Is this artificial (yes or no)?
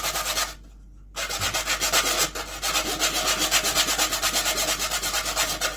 no